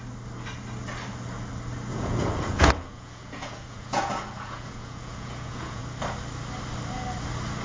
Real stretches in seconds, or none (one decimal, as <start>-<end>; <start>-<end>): 0.0-1.9; 5.8-7.6